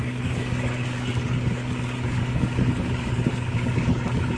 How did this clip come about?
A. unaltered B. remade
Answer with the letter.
B